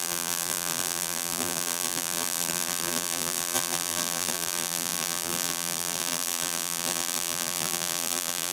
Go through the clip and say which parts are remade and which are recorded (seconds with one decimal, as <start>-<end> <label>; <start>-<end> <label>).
0.0-8.5 remade